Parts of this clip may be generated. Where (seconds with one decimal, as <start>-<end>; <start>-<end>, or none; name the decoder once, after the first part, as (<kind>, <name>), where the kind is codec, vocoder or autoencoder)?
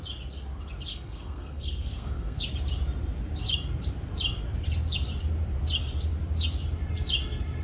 0.9-2.4 (codec, SNAC)